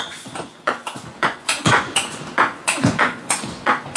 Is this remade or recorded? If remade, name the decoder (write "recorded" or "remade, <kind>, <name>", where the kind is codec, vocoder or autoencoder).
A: remade, vocoder, Vocos